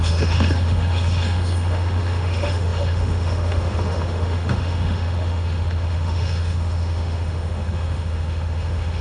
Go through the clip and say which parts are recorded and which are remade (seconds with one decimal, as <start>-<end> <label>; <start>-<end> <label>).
0.0-9.0 remade